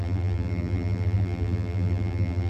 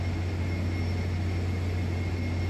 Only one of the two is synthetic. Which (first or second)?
first